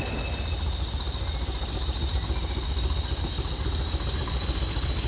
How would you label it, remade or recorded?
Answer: recorded